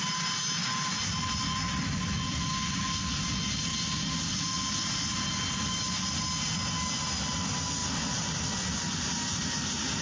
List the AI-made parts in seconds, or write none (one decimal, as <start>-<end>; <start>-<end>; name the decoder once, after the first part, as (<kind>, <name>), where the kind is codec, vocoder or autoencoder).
0.6-2.8 (vocoder, BigVGAN v2); 3.7-4.4; 7.8-10.0